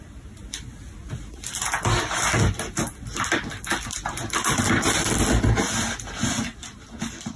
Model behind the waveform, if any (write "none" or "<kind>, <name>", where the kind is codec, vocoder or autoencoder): none